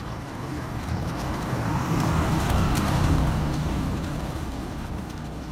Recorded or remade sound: remade